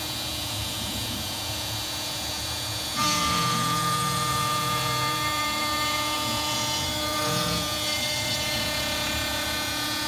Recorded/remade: remade